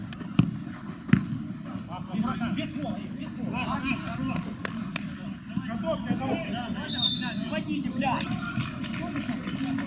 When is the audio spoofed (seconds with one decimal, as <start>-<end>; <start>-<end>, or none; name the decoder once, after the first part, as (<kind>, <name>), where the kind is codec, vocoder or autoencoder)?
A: none